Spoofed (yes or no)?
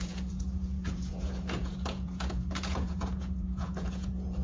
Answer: yes